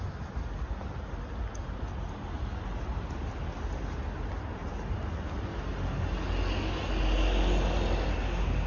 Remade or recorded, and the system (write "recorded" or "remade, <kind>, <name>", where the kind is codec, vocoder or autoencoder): recorded